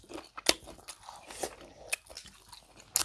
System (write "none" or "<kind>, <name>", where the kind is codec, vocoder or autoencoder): none